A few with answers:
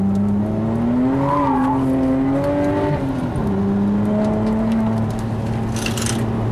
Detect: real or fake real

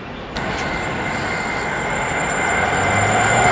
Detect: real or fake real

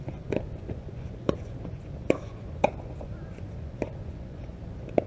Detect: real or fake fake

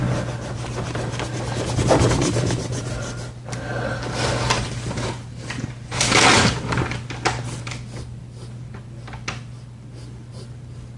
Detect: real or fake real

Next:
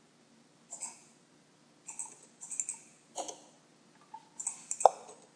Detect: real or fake real